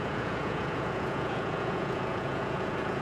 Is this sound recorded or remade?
remade